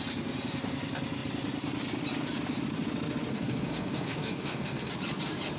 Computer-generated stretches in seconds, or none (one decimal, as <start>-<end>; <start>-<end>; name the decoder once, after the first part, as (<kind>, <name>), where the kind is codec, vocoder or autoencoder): 3.3-4.9 (codec, DAC)